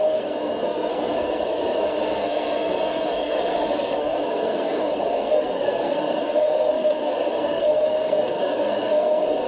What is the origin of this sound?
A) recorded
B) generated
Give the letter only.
B